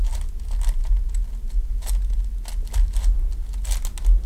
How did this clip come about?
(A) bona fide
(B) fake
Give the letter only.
A